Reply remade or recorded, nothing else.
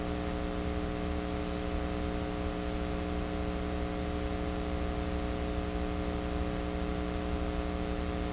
recorded